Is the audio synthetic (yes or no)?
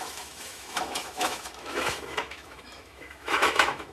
yes